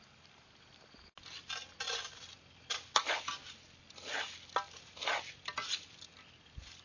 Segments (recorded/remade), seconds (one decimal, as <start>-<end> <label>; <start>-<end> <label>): 0.0-6.8 recorded